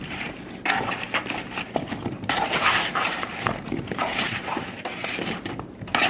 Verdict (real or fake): fake